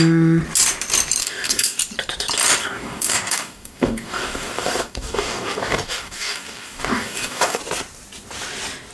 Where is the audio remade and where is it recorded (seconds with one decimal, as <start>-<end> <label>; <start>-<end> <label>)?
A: 0.0-1.2 recorded; 1.2-1.8 remade; 1.8-2.6 recorded; 2.6-7.6 remade; 7.6-8.9 recorded

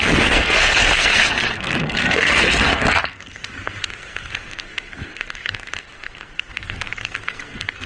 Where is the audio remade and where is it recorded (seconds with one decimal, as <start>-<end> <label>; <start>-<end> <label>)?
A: 0.0-7.9 remade

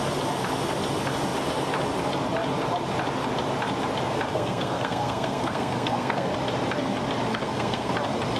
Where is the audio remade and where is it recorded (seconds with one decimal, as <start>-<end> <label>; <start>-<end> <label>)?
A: 0.0-4.3 recorded; 4.3-6.3 remade; 6.3-7.3 recorded; 7.3-7.9 remade; 7.9-8.4 recorded

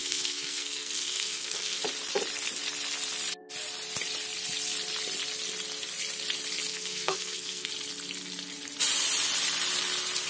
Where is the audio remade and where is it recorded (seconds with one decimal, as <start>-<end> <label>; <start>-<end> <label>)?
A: 0.0-1.8 remade; 1.8-6.7 recorded; 6.7-7.7 remade; 7.7-10.3 recorded

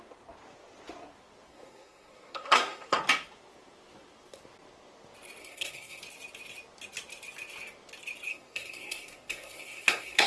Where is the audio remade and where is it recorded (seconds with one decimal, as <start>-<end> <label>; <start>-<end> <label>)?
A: 0.0-1.5 recorded; 1.5-3.0 remade; 3.0-5.4 recorded; 5.4-6.0 remade; 6.0-8.3 recorded; 8.3-10.3 remade